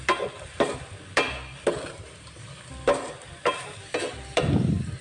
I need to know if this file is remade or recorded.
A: remade